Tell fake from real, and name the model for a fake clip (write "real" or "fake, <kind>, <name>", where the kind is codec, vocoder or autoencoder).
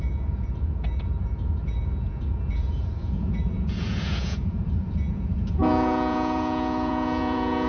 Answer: fake, vocoder, Vocos